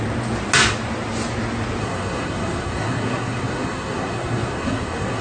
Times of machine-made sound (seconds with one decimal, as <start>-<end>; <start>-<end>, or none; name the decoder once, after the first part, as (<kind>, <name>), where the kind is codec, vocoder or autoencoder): 1.8-5.2 (codec, SNAC)